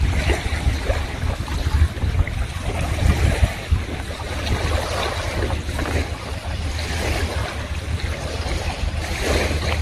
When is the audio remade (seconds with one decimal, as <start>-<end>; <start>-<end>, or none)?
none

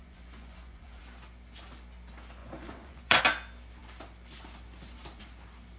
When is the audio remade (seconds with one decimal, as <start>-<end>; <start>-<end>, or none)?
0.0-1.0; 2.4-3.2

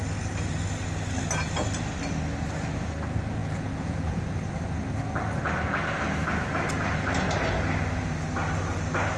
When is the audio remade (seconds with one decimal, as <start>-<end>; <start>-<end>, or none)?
3.4-4.2

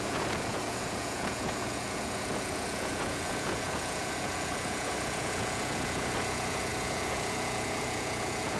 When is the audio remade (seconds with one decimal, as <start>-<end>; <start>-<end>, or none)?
0.0-8.6

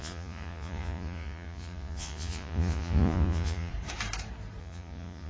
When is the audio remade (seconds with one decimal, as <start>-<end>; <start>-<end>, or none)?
0.0-3.7; 4.6-5.3

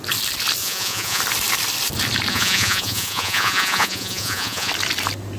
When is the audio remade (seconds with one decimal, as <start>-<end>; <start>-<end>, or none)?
0.6-1.2; 2.3-4.7

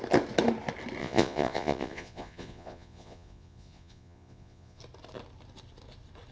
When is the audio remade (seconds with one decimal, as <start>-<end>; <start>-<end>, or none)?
1.0-4.8